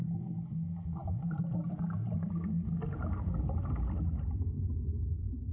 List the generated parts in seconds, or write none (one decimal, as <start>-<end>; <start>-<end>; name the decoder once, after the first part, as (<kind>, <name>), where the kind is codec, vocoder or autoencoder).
none

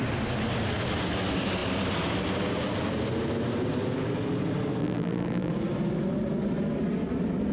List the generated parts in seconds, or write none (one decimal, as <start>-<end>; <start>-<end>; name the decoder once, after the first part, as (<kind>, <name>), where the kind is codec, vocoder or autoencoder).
4.8-5.5 (vocoder, BigVGAN v2)

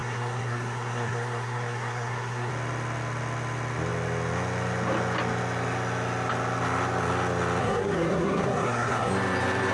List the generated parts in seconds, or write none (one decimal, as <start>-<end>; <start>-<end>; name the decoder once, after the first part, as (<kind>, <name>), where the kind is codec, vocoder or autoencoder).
0.0-2.5 (codec, SNAC); 7.6-9.1